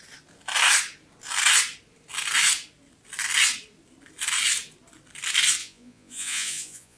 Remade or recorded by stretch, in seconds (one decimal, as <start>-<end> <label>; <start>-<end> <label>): 0.0-5.6 recorded; 5.6-7.0 remade